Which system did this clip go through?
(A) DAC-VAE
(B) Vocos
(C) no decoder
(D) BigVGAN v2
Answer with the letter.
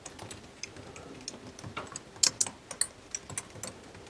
C